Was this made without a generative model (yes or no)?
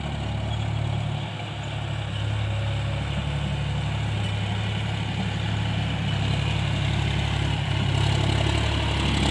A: yes